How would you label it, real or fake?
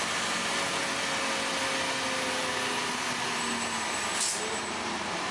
real